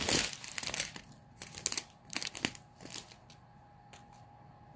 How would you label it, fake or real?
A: real